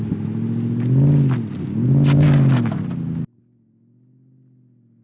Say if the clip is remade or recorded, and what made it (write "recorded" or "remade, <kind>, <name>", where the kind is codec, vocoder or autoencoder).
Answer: recorded